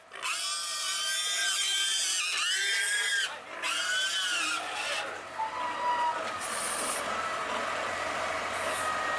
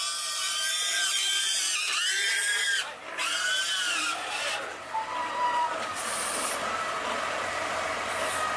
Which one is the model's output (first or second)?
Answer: second